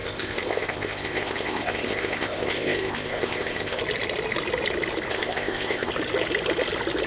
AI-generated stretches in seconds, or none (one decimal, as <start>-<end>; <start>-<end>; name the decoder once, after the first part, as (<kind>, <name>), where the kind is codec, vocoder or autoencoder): 0.0-3.8 (codec, ZipCodec); 5.1-5.9

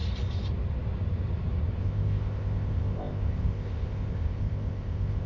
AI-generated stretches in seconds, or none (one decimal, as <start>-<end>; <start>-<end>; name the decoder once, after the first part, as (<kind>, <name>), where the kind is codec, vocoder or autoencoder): 1.8-5.3 (codec, ZipCodec)

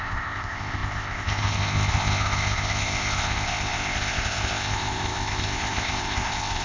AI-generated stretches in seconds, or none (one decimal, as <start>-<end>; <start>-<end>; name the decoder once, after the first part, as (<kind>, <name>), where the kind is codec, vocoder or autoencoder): 0.0-6.6 (codec, ZipCodec)

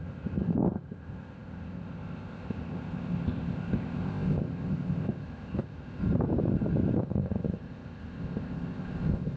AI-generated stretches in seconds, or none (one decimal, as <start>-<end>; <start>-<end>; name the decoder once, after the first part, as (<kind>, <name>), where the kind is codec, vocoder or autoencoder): 0.0-6.0 (codec, ZipCodec); 7.0-9.4